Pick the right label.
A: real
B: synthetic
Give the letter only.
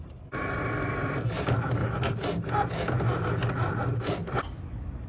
A